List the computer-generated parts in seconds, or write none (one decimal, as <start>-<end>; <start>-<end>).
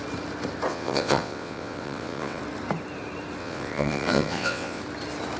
0.7-2.4; 3.4-4.8